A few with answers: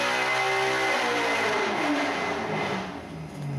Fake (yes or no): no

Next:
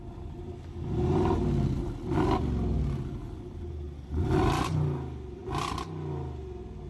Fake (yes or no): no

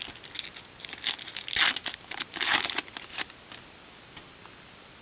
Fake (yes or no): no